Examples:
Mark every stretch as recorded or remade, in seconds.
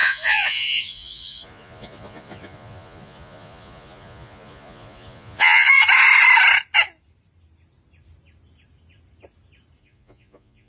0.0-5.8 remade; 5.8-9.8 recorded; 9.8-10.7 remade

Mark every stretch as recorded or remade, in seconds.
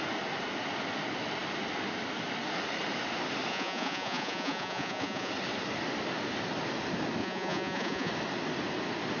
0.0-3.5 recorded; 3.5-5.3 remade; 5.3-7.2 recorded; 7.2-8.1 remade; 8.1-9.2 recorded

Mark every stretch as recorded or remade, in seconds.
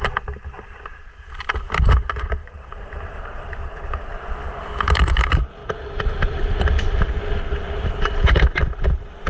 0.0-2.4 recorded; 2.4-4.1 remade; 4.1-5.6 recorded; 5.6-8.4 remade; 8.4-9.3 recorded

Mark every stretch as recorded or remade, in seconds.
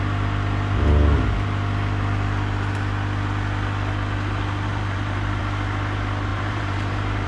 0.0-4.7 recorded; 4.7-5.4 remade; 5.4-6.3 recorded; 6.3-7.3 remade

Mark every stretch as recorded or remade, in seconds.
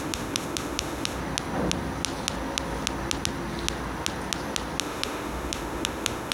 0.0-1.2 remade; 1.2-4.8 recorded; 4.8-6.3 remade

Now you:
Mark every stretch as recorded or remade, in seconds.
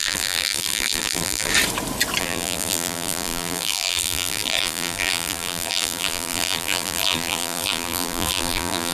0.0-1.5 remade; 1.5-2.2 recorded; 2.2-8.9 remade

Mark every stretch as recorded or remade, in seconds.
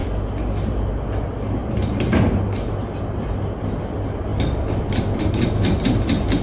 0.0-6.4 recorded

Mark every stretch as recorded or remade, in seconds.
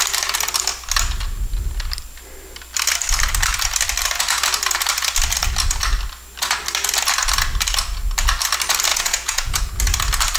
0.0-8.9 recorded; 8.9-9.7 remade; 9.7-10.4 recorded